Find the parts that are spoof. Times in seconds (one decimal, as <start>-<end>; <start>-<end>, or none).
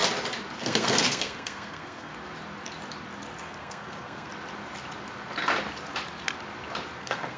0.6-2.1; 3.4-4.3; 7.0-7.4